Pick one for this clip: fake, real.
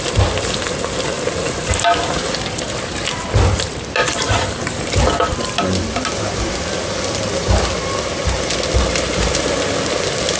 real